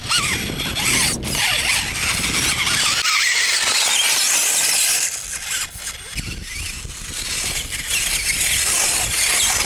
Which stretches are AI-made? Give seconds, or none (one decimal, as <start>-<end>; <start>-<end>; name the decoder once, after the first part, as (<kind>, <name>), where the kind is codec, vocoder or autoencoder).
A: none